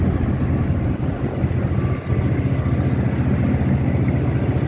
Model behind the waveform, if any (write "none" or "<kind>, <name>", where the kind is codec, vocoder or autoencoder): none